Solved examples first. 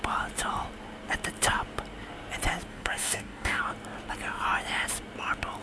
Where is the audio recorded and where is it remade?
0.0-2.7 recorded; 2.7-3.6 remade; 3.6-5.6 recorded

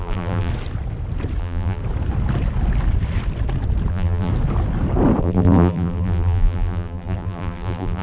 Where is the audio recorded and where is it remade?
0.0-0.5 remade; 0.5-1.4 recorded; 1.4-1.8 remade; 1.8-3.9 recorded; 3.9-4.3 remade; 4.3-5.2 recorded; 5.2-8.0 remade

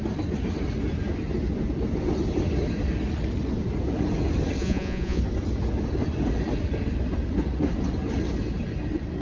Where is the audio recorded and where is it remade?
0.0-4.6 recorded; 4.6-5.2 remade; 5.2-9.2 recorded